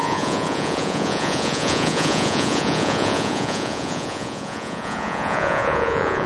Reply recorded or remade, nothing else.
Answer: remade